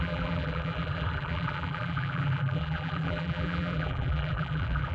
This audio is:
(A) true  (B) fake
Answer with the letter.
B